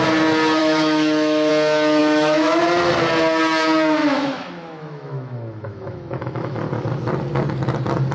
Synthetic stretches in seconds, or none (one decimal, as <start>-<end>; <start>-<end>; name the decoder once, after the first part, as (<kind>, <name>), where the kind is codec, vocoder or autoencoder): 0.6-1.5 (autoencoder, DAC-VAE); 2.0-2.6; 4.0-6.6